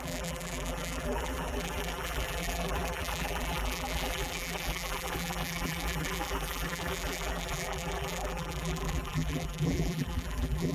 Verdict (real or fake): fake